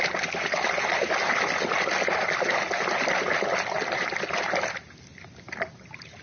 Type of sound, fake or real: real